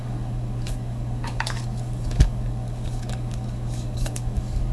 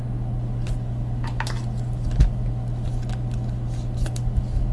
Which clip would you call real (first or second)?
second